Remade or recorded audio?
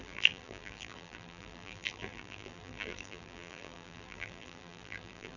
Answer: remade